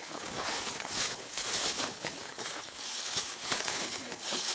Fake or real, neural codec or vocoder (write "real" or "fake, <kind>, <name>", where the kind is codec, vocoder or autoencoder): fake, codec, HILCodec